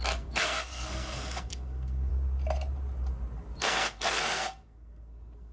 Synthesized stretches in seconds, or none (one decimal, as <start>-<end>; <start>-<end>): 0.0-2.1; 3.6-5.5